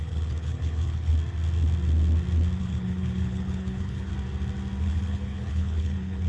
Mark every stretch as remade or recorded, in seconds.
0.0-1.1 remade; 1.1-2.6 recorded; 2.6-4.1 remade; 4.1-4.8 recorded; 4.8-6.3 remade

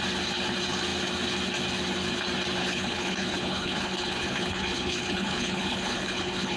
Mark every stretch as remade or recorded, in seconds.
0.0-2.6 recorded; 2.6-6.6 remade

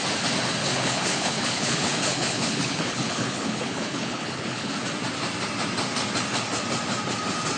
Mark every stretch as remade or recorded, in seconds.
0.0-0.6 recorded; 0.6-4.7 remade; 4.7-7.6 recorded

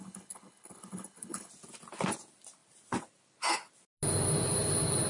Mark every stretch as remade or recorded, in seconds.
0.0-1.5 remade; 1.5-5.1 recorded

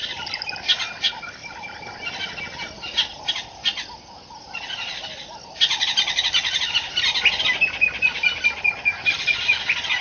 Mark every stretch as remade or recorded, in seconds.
0.0-10.0 recorded

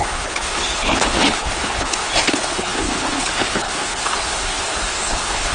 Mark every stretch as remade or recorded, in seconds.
0.0-5.5 remade